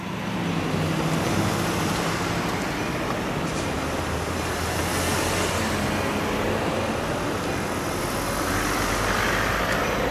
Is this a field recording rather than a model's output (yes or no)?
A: yes